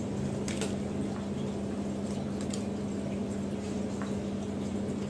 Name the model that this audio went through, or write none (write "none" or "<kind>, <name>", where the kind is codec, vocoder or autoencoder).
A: none